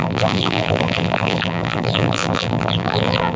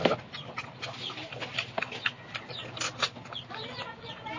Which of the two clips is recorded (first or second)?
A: second